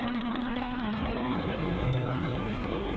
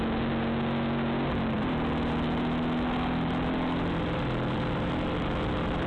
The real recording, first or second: second